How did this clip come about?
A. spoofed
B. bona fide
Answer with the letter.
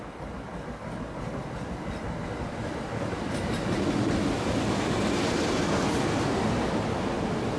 B